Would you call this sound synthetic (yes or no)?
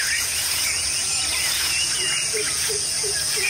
yes